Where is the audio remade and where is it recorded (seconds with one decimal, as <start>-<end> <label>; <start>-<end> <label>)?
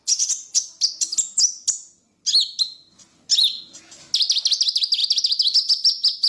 0.0-6.3 recorded